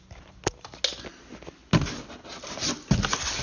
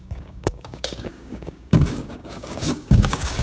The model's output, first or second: second